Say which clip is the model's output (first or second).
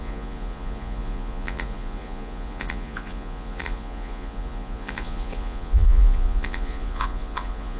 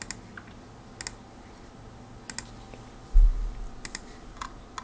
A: first